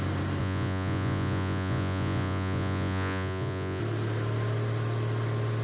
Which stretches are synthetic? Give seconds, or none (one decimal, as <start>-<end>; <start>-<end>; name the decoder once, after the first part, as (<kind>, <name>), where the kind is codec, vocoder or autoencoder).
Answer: 0.4-3.8 (vocoder, Vocos)